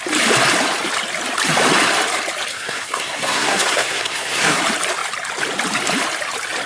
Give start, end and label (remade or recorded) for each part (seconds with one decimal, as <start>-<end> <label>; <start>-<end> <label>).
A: 0.0-2.5 recorded; 2.5-4.6 remade; 4.6-6.7 recorded